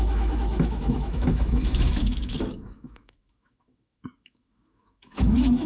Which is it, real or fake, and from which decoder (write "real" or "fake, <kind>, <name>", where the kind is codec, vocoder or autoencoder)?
fake, autoencoder, DAC-VAE